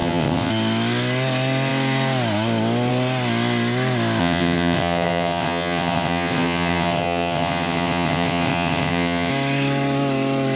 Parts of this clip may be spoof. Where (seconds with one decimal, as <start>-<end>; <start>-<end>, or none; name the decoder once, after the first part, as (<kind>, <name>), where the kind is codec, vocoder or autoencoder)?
0.0-0.5 (vocoder, WaveNeXt); 4.2-9.3